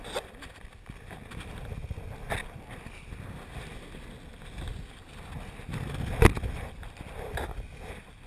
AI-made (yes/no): no